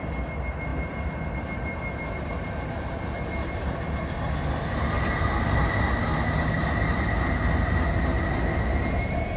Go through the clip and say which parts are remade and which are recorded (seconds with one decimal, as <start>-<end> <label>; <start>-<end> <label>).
0.0-9.4 recorded